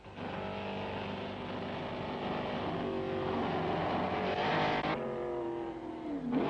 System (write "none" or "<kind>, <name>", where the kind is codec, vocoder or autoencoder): none